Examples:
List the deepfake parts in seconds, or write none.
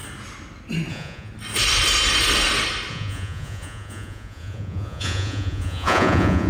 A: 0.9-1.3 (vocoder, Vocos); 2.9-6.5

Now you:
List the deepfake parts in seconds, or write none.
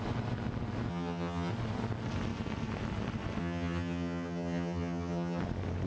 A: 0.9-1.5 (vocoder, HiFi-GAN); 3.4-5.4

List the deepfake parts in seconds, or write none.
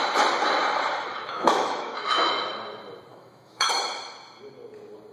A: 1.1-2.3 (autoencoder, DAC-VAE); 3.1-3.7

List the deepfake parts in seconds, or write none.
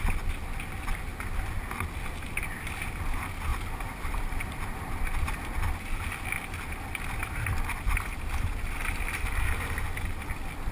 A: 3.5-5.0 (vocoder, BigVGAN v2); 7.2-9.1